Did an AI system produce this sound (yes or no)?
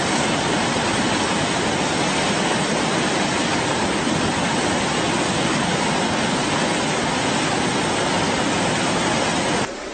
no